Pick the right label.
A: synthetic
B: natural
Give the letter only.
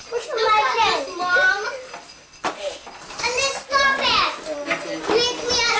B